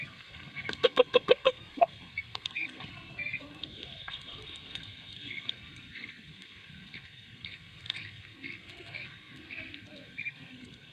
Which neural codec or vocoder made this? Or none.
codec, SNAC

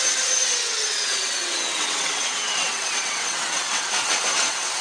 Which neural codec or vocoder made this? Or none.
vocoder, WaveNeXt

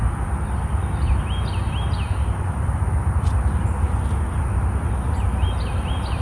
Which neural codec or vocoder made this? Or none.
none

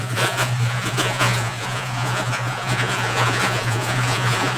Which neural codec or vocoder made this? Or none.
vocoder, Vocos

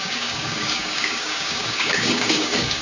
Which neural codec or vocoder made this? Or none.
codec, DAC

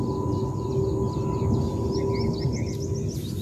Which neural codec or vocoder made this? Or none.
none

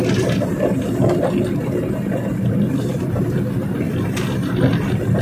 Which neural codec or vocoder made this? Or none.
none